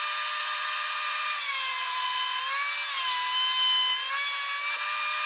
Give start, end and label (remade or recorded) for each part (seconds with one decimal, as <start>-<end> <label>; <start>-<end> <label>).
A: 0.0-0.4 recorded; 0.4-2.4 remade; 2.4-5.3 recorded